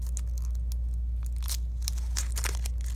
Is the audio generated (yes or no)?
no